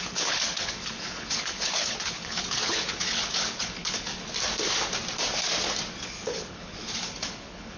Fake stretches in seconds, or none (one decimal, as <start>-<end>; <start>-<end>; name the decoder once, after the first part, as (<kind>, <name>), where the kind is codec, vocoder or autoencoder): 0.0-4.1 (codec, HILCodec); 6.0-7.8